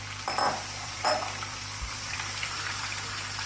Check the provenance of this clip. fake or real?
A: fake